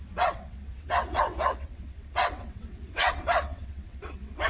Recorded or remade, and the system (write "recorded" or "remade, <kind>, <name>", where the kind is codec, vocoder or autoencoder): remade, vocoder, WaveNeXt